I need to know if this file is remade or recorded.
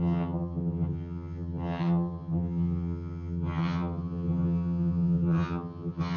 remade